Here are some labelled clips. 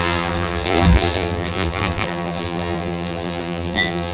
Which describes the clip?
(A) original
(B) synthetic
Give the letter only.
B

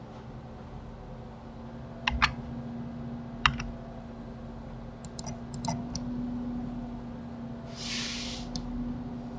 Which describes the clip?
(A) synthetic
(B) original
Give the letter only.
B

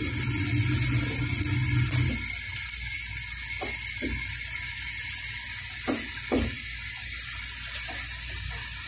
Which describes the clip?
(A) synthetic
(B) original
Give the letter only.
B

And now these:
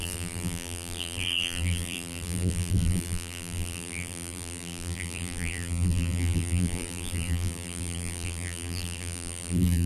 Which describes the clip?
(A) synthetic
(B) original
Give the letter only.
A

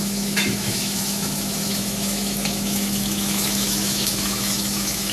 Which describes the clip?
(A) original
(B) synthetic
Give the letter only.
B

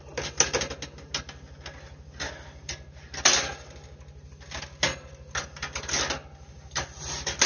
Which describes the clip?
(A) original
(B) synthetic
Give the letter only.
A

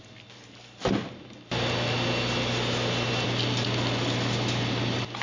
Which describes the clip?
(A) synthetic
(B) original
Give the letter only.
B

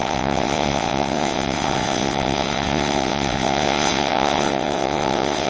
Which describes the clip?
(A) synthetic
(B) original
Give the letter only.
A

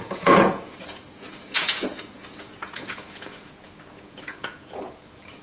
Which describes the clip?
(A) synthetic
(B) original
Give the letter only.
A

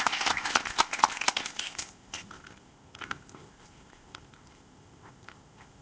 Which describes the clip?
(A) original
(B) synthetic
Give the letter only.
B